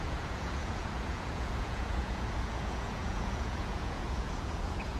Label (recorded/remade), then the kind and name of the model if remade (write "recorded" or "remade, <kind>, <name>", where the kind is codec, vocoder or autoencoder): remade, vocoder, Vocos